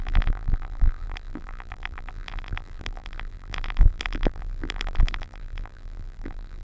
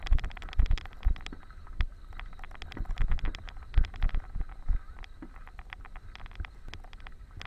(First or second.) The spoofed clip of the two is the first